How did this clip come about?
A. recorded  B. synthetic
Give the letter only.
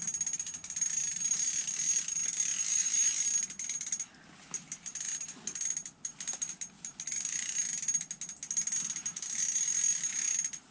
A